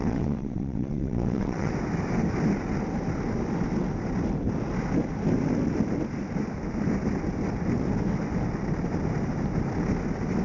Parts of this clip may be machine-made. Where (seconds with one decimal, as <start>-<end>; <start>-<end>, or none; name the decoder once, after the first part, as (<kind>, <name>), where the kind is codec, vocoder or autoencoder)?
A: 0.0-1.7 (vocoder, WaveNeXt)